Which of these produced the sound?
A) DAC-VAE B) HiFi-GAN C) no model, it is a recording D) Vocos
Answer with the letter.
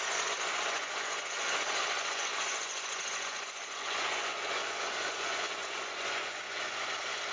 D